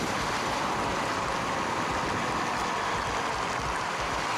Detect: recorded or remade recorded